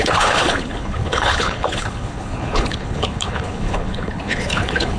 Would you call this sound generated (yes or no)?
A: yes